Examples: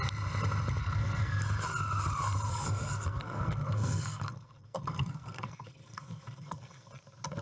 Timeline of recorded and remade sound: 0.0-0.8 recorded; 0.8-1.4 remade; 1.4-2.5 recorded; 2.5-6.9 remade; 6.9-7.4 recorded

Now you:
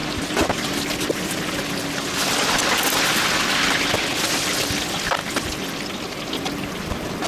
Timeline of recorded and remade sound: 0.0-7.3 recorded

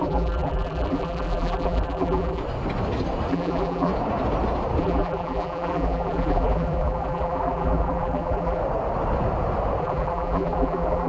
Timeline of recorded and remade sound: 0.0-2.4 remade; 2.4-3.3 recorded; 3.3-3.9 remade; 3.9-4.8 recorded; 4.8-8.6 remade; 8.6-9.8 recorded; 9.8-11.1 remade

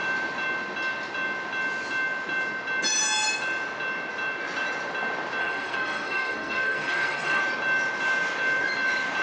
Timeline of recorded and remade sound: 0.0-5.4 recorded; 5.4-7.4 remade; 7.4-9.2 recorded

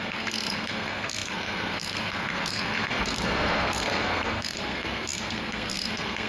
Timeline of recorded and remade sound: 0.0-6.3 remade

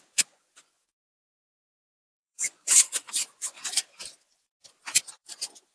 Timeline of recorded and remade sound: 0.0-3.6 remade; 3.6-4.2 recorded; 4.2-5.7 remade